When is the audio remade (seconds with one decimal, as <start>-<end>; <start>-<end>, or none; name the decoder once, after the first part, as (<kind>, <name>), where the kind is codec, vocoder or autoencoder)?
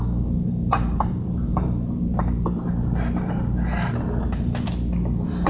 0.6-3.3 (vocoder, BigVGAN v2)